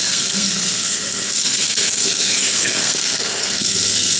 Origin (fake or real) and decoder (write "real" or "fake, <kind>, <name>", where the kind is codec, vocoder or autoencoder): fake, codec, SNAC